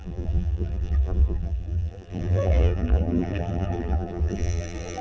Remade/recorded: remade